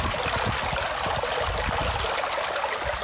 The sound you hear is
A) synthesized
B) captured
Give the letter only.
B